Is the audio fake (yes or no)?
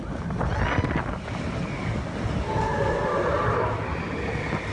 no